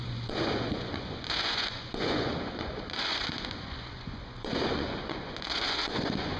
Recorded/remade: remade